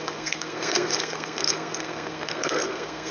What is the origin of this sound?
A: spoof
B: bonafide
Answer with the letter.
A